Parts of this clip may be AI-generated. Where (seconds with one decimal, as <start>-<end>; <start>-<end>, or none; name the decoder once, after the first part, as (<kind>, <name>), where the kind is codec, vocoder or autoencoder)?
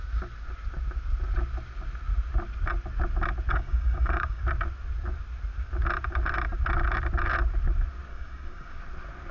3.5-4.4 (codec, DAC); 8.1-8.8